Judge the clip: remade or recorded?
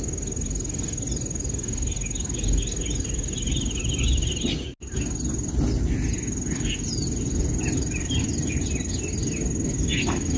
recorded